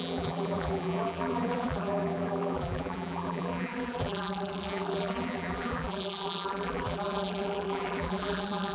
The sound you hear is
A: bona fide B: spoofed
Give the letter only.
B